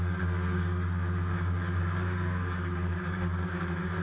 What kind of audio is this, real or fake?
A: fake